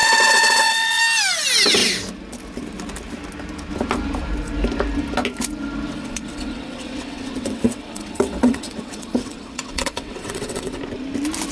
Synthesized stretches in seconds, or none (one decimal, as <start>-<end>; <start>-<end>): 0.0-1.0; 5.9-10.8